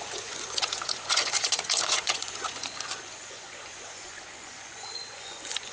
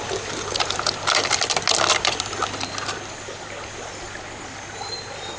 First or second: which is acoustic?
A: second